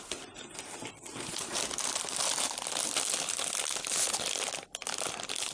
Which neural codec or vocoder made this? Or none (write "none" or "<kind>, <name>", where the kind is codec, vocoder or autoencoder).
none